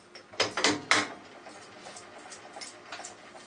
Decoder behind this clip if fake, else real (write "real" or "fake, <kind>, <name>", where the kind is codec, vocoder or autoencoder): real